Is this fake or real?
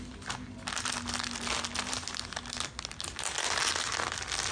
real